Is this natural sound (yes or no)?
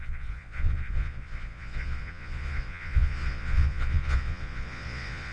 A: no